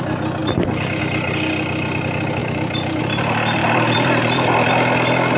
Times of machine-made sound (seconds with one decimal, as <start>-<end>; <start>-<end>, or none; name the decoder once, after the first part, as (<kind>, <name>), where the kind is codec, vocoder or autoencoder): 0.4-1.0 (vocoder, BigVGAN v2); 2.4-3.0; 3.6-4.7